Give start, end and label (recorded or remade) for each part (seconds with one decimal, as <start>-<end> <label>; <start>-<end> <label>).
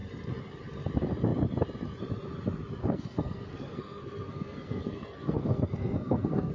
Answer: 0.0-2.8 recorded; 2.8-6.5 remade